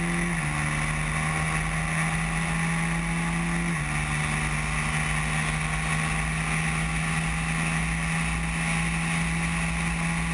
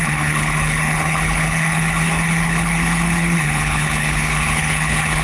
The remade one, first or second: second